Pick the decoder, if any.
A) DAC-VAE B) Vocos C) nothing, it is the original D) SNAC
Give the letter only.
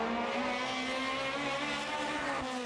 C